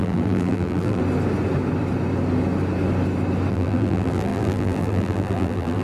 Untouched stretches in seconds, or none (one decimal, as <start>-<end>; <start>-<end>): 1.0-3.5